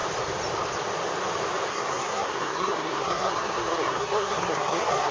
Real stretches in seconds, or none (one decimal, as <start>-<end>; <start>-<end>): 0.0-1.7